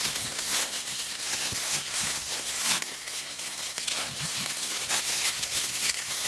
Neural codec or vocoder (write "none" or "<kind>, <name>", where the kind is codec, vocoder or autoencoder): codec, SNAC